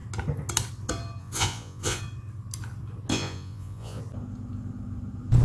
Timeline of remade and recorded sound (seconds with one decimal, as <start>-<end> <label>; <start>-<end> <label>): 0.0-1.2 recorded; 1.2-2.0 remade; 2.0-3.1 recorded; 3.1-4.0 remade; 4.0-5.4 recorded